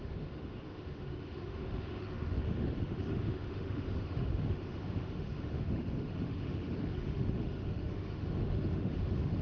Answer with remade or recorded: remade